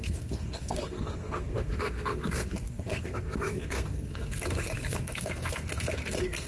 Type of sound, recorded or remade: remade